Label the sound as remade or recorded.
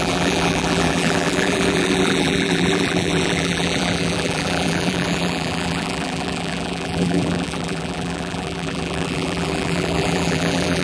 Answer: remade